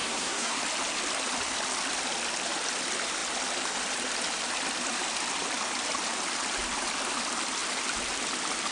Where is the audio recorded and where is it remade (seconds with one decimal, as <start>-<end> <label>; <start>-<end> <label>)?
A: 0.0-0.6 remade; 0.6-8.7 recorded